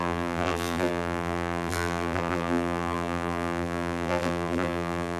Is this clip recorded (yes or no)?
no